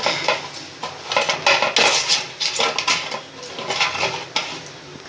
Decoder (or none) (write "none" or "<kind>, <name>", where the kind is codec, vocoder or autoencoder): none